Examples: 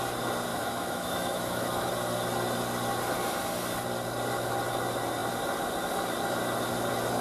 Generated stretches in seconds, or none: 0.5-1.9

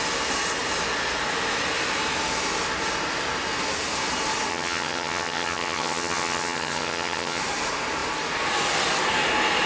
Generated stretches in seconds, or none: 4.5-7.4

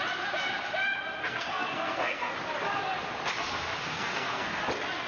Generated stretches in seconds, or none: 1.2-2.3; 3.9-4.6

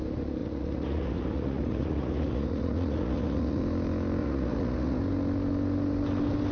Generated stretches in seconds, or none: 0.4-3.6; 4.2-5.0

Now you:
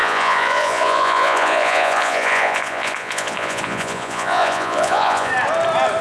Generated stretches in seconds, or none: 0.0-5.3